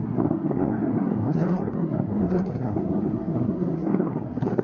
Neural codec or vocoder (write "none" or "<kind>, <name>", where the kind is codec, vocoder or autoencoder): codec, SNAC